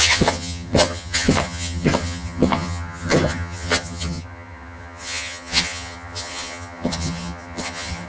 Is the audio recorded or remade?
remade